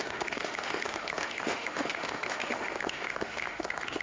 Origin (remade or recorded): remade